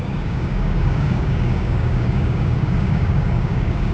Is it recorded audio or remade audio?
remade